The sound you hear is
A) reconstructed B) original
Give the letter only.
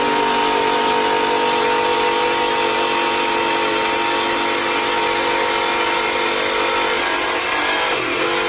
B